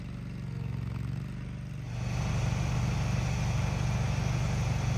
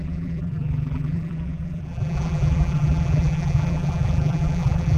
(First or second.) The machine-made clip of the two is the second